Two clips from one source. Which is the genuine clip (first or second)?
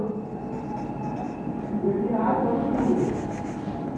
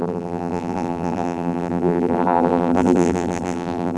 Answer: first